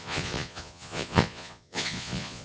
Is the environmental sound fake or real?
fake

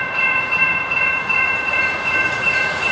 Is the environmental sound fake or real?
fake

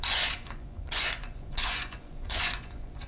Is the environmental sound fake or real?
fake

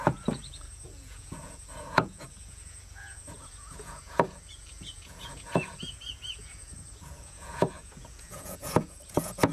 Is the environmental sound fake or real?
fake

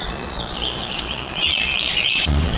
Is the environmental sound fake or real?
fake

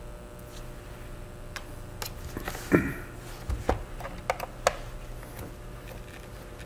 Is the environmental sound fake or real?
real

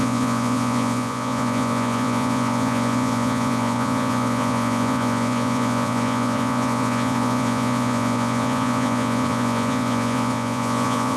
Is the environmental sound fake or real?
fake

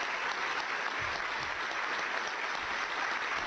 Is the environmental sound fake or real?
real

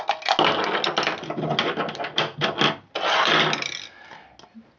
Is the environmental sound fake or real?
real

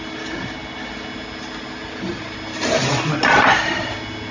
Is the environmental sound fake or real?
real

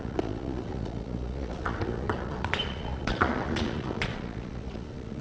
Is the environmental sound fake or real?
fake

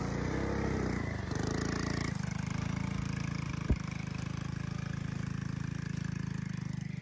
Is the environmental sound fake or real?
real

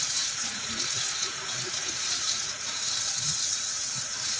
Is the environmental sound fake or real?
fake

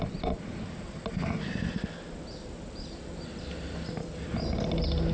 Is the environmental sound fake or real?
real